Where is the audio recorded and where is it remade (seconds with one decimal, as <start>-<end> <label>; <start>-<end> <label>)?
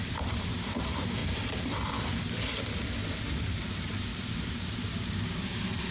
0.0-1.2 remade; 1.2-3.6 recorded; 3.6-5.9 remade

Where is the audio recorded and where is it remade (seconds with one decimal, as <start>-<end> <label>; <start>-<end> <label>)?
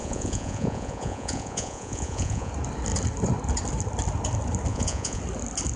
0.0-2.5 remade; 2.5-4.7 recorded; 4.7-5.2 remade; 5.2-5.8 recorded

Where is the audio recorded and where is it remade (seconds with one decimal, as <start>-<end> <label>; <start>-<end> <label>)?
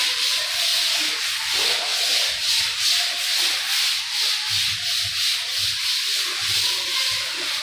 0.0-0.7 remade; 0.7-1.2 recorded; 1.2-1.9 remade; 1.9-6.5 recorded; 6.5-7.6 remade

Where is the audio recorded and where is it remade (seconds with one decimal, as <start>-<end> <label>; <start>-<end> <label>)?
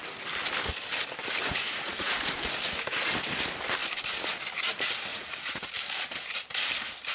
0.0-1.5 recorded; 1.5-2.1 remade; 2.1-5.1 recorded; 5.1-5.7 remade; 5.7-7.1 recorded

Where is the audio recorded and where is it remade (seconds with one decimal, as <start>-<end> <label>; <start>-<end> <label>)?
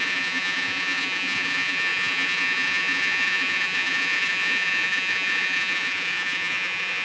0.0-7.0 remade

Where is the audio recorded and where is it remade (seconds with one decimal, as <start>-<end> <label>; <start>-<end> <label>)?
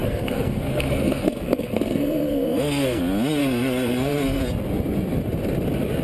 0.0-3.0 remade; 3.0-3.4 recorded; 3.4-4.4 remade; 4.4-6.0 recorded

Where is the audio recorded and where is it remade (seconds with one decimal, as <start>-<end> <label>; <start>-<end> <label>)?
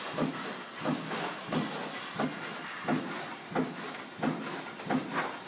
0.0-5.5 recorded